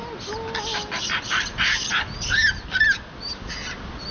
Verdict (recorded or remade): recorded